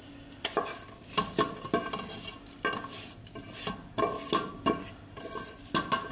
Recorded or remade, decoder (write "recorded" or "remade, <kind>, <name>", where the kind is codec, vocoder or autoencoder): recorded